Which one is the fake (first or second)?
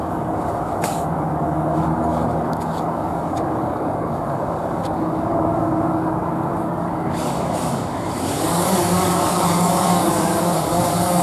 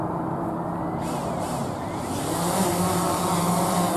first